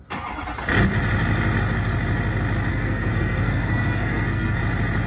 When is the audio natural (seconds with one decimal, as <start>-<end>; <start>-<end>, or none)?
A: 0.0-2.7; 4.6-5.1